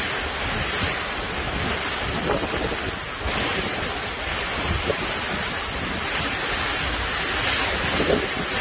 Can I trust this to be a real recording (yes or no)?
yes